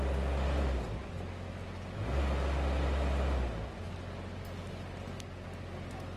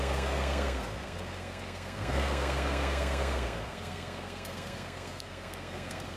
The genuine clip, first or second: first